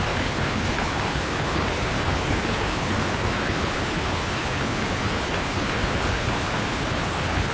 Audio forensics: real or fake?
fake